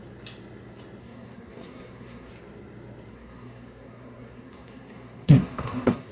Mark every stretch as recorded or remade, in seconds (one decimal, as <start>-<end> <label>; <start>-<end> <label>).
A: 0.0-1.0 recorded; 1.0-2.3 remade; 2.3-3.1 recorded; 3.1-6.1 remade